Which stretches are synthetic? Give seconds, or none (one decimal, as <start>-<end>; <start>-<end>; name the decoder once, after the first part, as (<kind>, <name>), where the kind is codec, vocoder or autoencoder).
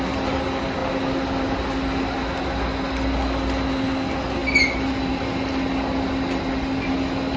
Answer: none